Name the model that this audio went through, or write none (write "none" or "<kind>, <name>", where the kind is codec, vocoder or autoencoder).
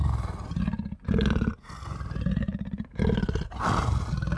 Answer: none